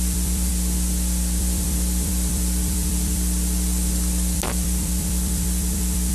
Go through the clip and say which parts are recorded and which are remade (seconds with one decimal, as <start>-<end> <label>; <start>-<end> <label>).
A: 0.0-0.5 remade; 0.5-1.4 recorded; 1.4-6.1 remade